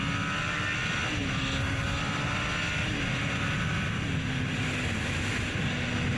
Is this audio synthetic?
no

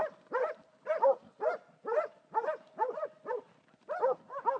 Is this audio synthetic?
no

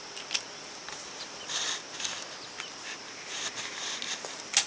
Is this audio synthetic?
no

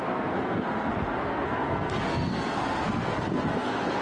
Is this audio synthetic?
yes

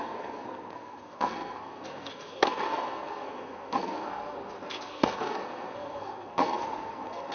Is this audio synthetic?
yes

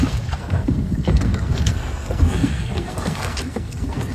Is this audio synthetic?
yes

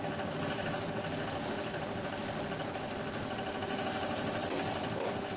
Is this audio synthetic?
no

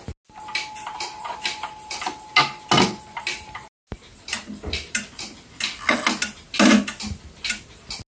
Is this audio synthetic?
no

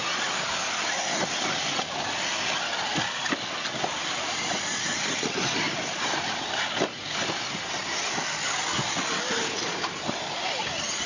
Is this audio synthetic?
no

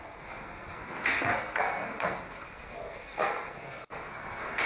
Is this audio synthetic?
yes